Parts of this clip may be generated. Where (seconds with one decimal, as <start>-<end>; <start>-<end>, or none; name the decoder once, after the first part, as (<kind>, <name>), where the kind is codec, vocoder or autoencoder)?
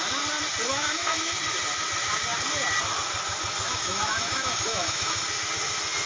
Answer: 0.7-1.4 (autoencoder, DAC-VAE); 3.5-5.2